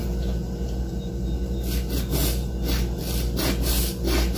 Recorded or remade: recorded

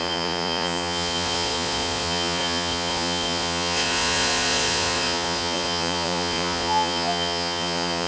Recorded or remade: remade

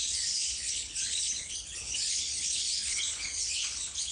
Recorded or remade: remade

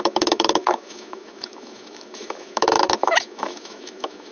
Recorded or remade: remade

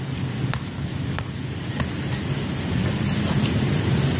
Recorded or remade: recorded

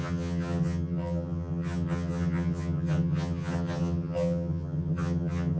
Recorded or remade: remade